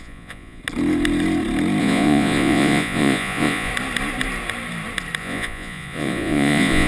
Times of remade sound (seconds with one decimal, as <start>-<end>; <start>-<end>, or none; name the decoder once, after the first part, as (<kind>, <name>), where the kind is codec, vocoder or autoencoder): 0.0-0.6 (vocoder, Vocos); 1.8-3.7; 5.2-6.9